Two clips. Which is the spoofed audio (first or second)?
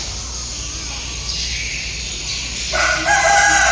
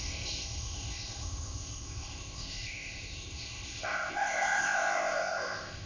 second